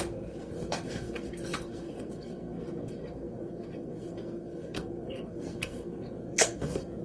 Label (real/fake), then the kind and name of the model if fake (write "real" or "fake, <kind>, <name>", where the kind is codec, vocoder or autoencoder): fake, codec, SNAC